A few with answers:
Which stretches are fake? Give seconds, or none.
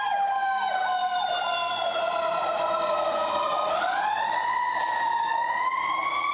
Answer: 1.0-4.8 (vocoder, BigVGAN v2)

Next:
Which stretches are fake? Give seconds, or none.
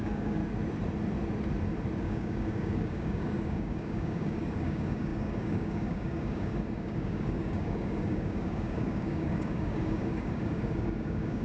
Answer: 0.0-0.4 (codec, DAC); 2.0-11.4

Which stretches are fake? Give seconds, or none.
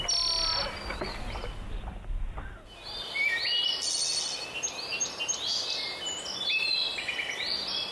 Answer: none